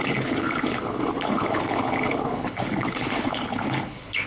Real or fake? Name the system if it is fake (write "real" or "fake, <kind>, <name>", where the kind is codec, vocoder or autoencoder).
fake, codec, HILCodec